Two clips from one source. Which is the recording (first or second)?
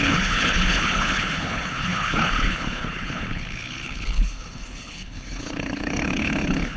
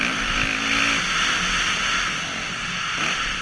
second